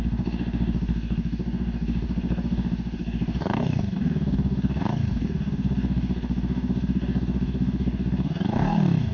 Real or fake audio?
fake